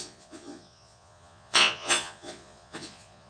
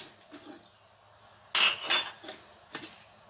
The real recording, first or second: second